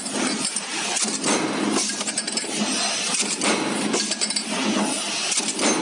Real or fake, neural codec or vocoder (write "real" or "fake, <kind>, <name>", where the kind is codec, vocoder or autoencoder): real